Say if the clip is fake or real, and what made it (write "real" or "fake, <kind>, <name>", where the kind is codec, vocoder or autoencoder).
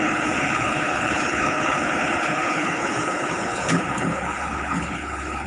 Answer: fake, codec, HILCodec